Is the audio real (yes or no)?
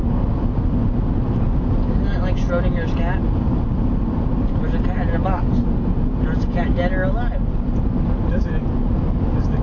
yes